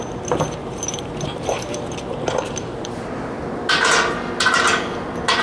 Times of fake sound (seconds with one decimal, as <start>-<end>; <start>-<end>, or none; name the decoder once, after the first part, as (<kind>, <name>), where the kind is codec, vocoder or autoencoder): 0.6-3.1 (vocoder, BigVGAN v2)